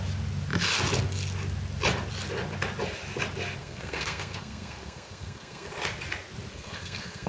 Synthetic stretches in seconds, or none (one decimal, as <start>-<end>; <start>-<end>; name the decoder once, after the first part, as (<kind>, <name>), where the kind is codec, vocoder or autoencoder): 3.6-5.7 (codec, SNAC); 6.5-7.3